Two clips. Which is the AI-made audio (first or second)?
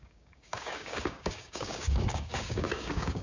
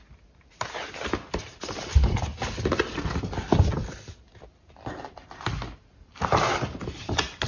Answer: first